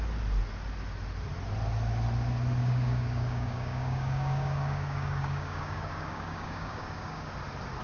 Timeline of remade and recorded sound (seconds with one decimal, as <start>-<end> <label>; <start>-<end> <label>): 0.0-2.6 recorded; 2.6-7.3 remade; 7.3-7.8 recorded